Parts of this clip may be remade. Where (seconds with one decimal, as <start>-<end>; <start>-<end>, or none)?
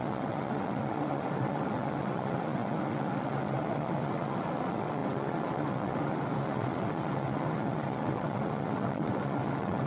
0.0-9.9